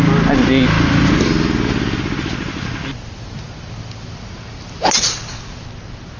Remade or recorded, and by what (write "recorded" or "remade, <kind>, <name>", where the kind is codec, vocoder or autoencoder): recorded